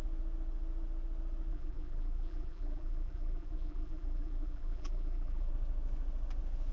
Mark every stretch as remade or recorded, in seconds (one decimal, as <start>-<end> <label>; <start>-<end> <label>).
0.0-1.5 recorded; 1.5-5.5 remade; 5.5-6.7 recorded